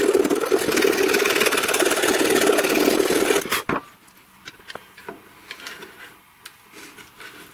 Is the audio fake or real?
real